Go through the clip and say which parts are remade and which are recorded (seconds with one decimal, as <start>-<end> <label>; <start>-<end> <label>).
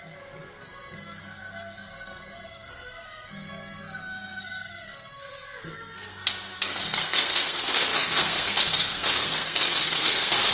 0.0-10.5 remade